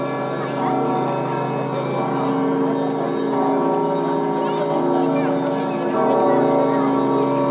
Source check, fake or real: real